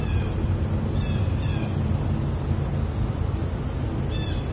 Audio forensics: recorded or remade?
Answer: recorded